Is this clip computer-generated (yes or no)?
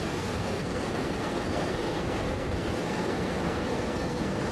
yes